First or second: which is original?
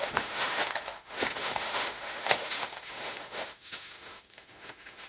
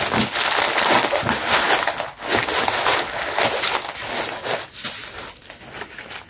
second